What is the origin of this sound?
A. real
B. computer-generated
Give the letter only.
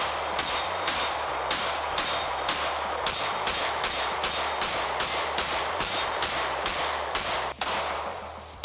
A